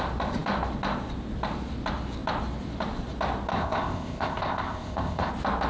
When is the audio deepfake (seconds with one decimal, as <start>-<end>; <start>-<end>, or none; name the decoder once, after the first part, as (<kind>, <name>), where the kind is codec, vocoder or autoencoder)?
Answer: 3.5-5.3 (codec, ZipCodec)